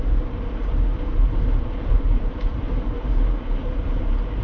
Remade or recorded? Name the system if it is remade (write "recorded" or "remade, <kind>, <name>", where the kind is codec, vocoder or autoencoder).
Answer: remade, vocoder, BigVGAN v2